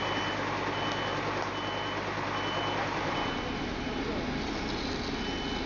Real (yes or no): yes